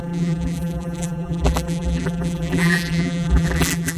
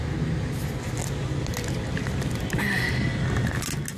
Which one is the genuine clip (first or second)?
second